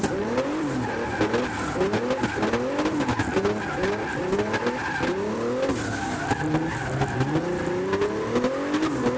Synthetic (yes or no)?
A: no